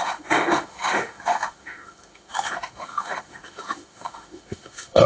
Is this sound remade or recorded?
remade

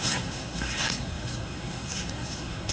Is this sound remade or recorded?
remade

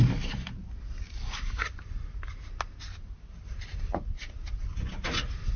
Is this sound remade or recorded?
recorded